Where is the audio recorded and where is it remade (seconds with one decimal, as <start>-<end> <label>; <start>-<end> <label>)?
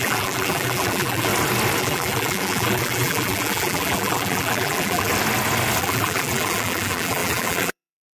0.0-1.3 remade; 1.3-1.8 recorded; 1.8-5.1 remade; 5.1-5.8 recorded; 5.8-8.1 remade